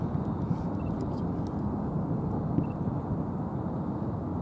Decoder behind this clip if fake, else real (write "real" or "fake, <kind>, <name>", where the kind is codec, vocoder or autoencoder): real